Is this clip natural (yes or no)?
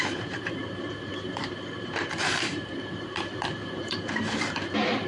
no